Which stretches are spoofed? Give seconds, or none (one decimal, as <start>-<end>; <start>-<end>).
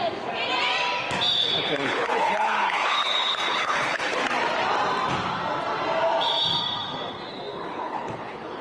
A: 1.4-4.2; 7.5-8.6